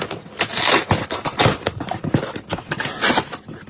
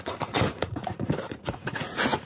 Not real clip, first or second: second